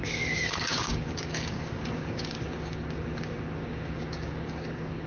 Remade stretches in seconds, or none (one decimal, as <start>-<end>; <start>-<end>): 0.0-5.1